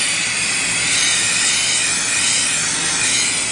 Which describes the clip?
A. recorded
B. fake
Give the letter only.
A